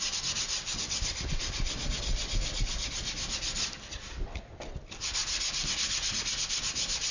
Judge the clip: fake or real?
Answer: real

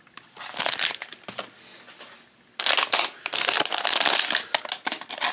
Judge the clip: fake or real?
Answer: real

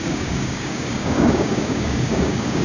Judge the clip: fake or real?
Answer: fake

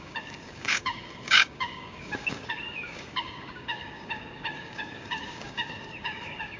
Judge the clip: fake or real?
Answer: fake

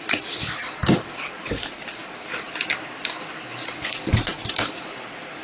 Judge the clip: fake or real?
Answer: real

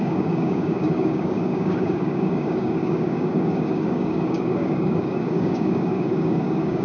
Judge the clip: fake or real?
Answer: fake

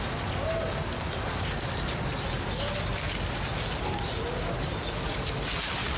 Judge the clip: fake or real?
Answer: real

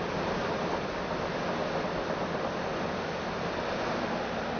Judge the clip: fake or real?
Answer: real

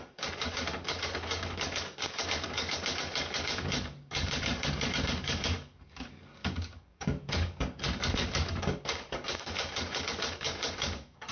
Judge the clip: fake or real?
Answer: fake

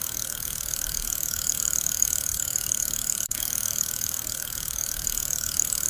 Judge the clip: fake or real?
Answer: fake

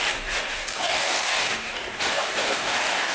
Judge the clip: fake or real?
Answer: fake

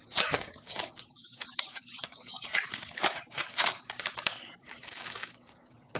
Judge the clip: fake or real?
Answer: fake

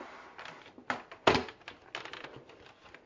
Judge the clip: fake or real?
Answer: real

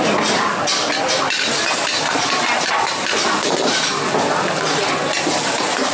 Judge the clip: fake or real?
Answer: real